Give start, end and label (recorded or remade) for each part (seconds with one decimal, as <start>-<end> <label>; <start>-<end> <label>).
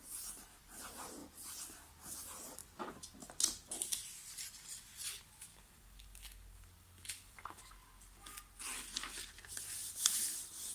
0.0-5.5 recorded; 5.5-7.6 remade; 7.6-10.7 recorded